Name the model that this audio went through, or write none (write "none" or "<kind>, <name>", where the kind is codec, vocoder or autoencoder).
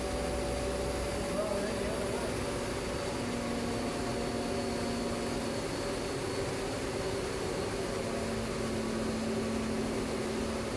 none